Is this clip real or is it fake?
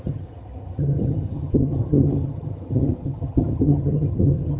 fake